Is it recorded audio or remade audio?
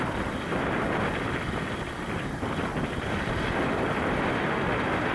recorded